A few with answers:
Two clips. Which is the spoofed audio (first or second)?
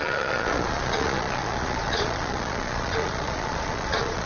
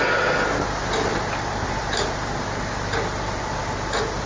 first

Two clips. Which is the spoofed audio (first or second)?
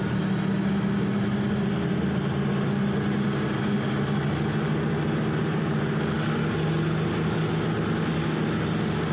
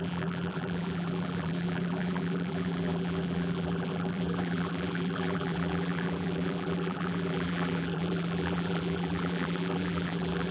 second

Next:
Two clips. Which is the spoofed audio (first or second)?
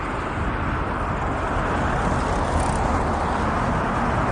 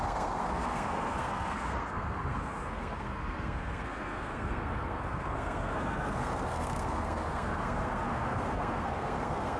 second